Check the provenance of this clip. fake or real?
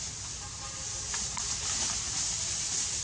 real